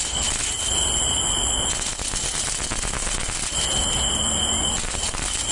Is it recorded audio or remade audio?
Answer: recorded